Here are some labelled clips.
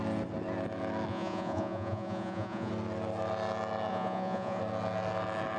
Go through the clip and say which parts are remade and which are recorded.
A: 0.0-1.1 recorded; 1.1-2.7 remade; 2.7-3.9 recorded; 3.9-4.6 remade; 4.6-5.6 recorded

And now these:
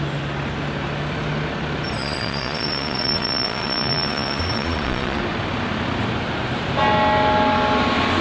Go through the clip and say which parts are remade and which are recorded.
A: 0.0-2.0 recorded; 2.0-5.2 remade; 5.2-8.2 recorded

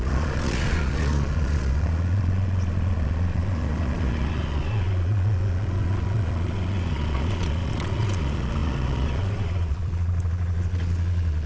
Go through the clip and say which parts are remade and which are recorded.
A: 0.0-11.5 remade

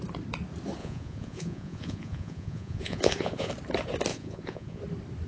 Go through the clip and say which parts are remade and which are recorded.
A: 0.0-0.8 recorded; 0.8-3.5 remade; 3.5-4.1 recorded; 4.1-4.8 remade; 4.8-5.3 recorded